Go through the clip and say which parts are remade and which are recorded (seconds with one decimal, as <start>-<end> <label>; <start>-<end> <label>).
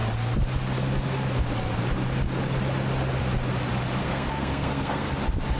0.0-4.0 recorded; 4.0-5.1 remade; 5.1-5.6 recorded